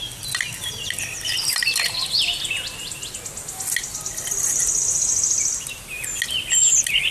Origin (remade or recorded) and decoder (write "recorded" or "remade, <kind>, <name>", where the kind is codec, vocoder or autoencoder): recorded